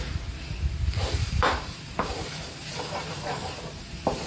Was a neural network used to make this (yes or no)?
yes